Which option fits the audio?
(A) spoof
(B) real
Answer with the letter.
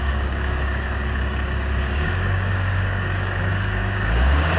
A